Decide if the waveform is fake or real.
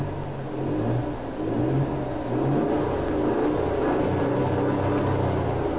real